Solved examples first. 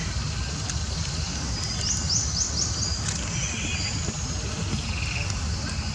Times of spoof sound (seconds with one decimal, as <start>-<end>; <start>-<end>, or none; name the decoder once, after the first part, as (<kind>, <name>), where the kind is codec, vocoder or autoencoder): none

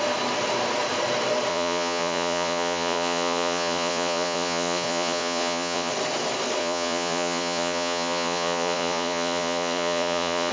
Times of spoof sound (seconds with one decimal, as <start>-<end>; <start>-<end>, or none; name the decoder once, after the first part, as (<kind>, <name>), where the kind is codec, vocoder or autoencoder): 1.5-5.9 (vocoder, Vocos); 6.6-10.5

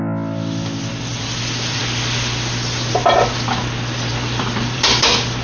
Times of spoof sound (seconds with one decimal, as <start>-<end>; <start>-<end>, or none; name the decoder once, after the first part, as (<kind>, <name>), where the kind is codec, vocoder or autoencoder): 1.1-1.8 (vocoder, BigVGAN v2); 4.1-5.0

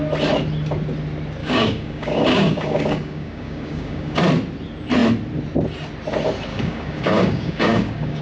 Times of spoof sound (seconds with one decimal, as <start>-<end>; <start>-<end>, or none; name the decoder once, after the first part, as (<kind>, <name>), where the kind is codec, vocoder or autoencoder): 1.4-4.2 (codec, DAC); 6.5-8.2

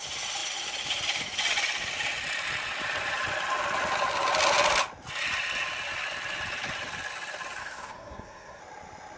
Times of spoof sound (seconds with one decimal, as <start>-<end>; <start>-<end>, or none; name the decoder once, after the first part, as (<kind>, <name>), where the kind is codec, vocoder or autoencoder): 7.6-8.6 (codec, SNAC)

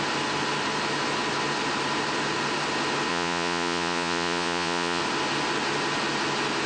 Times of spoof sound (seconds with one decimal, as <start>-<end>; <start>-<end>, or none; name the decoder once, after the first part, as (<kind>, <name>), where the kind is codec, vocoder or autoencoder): 3.1-5.0 (vocoder, Vocos)

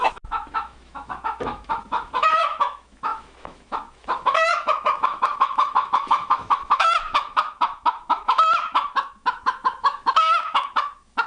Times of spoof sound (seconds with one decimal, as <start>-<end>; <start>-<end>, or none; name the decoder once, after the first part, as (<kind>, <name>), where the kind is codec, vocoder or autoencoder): 0.0-11.3 (autoencoder, DAC-VAE)

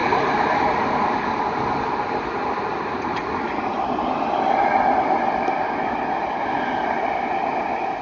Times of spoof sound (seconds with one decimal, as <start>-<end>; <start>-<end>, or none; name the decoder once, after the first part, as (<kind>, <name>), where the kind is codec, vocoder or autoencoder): none